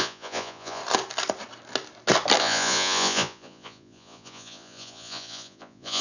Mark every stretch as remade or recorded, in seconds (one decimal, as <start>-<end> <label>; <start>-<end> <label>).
0.0-0.8 remade; 0.8-2.4 recorded; 2.4-6.0 remade